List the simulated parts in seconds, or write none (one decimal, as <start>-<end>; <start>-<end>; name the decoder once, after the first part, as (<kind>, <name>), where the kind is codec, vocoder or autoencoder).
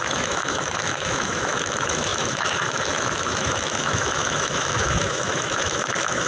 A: 0.0-6.3 (autoencoder, DAC-VAE)